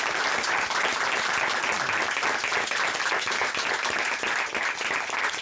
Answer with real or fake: real